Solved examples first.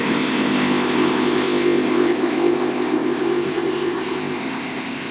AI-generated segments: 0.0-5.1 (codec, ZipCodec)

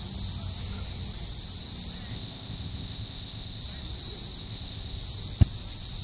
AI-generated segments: 2.1-3.6 (codec, ZipCodec); 4.4-5.0

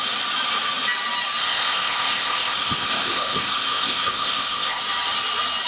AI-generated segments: 1.4-4.8 (codec, ZipCodec)

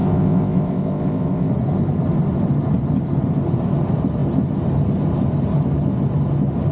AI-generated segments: 0.0-1.5 (codec, ZipCodec)

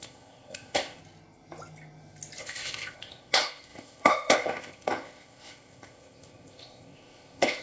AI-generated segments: 0.0-1.0 (codec, ZipCodec); 2.4-7.6

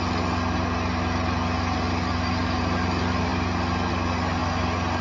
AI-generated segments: none

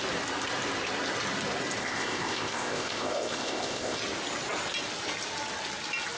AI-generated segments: 1.8-4.0 (codec, ZipCodec)